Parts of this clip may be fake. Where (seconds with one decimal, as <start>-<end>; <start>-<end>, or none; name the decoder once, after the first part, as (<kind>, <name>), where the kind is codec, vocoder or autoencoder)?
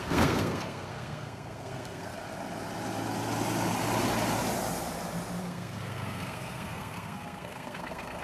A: 0.0-2.1 (codec, SNAC); 5.4-8.2